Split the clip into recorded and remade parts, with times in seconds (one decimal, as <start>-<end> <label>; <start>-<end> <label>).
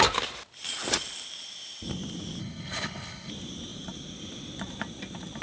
0.0-2.4 recorded; 2.4-3.3 remade; 3.3-5.4 recorded